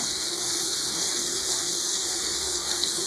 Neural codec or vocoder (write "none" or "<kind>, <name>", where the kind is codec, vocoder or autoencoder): codec, SNAC